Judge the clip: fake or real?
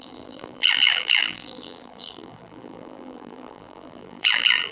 fake